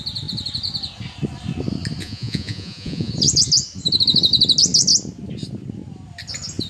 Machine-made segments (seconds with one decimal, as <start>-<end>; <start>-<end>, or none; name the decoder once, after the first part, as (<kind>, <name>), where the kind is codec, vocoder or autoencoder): 2.0-3.1 (vocoder, Vocos)